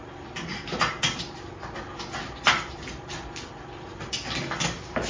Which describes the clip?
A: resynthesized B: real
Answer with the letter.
B